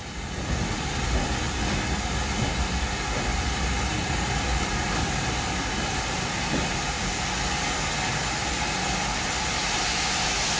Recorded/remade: recorded